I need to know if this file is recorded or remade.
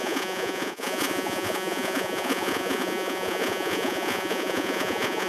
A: remade